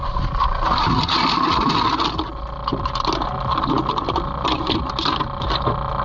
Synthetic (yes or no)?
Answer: no